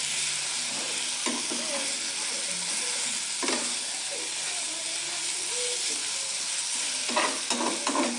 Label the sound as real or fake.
real